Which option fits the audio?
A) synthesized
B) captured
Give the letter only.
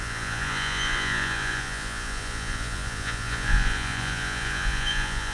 A